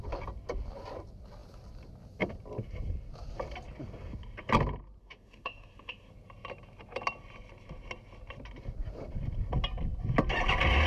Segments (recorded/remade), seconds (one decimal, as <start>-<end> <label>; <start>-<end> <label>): 0.0-5.0 recorded; 5.0-6.1 remade; 6.1-10.9 recorded